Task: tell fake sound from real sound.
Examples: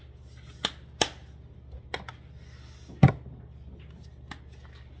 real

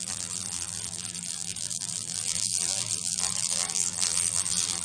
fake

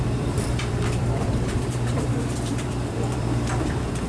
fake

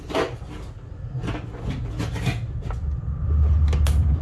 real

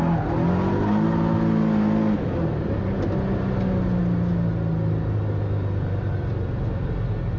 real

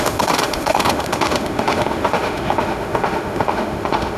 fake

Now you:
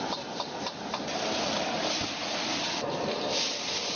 real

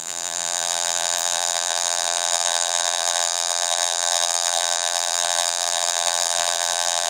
fake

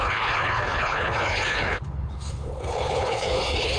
fake